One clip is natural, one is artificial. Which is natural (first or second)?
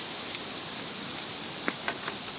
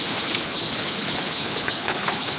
first